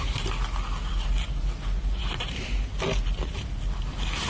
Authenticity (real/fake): real